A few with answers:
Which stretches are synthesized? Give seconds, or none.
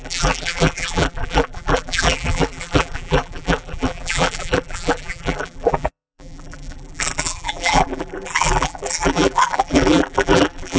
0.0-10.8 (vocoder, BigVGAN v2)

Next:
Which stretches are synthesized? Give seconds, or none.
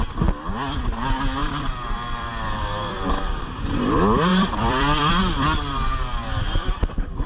1.4-3.8 (vocoder, BigVGAN v2); 4.3-5.1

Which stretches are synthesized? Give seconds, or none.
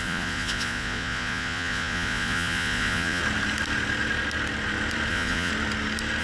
0.0-3.2 (vocoder, Vocos); 5.1-5.5